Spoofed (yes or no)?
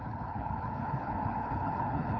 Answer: yes